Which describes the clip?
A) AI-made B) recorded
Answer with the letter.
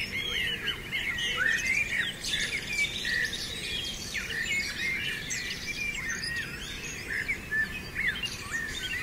A